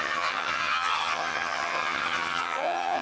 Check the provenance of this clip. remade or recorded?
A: remade